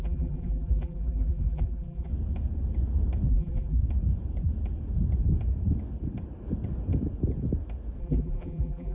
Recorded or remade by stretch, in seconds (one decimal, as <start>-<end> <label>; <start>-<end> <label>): 0.0-2.1 remade; 2.1-3.3 recorded; 3.3-3.8 remade; 3.8-8.0 recorded; 8.0-8.9 remade